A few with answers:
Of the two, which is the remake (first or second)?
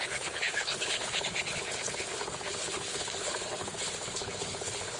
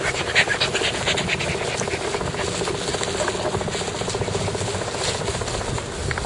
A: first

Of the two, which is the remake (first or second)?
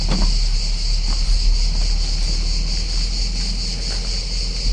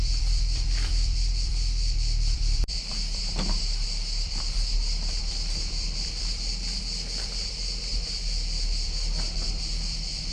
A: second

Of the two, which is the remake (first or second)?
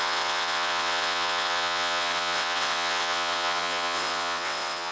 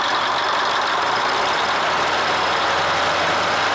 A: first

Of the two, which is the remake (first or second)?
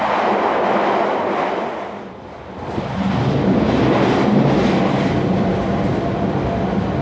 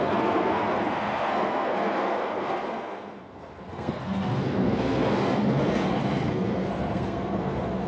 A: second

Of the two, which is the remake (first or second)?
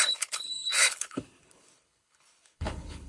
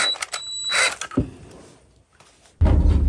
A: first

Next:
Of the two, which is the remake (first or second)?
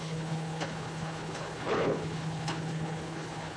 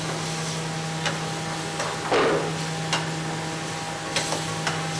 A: first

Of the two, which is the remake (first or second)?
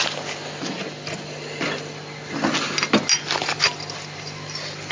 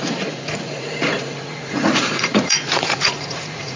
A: second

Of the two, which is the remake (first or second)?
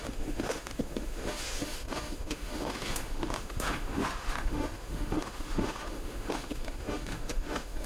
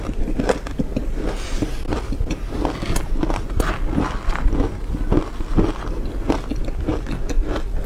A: first